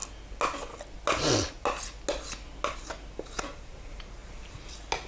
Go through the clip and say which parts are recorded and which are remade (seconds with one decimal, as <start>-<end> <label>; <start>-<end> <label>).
0.0-3.1 recorded; 3.1-4.2 remade; 4.2-5.1 recorded